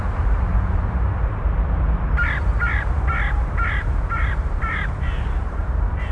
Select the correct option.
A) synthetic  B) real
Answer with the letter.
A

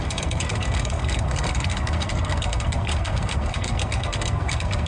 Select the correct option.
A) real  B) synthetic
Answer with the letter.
B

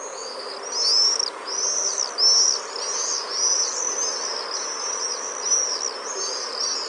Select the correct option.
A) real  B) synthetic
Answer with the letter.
A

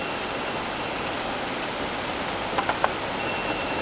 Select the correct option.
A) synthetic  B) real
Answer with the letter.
B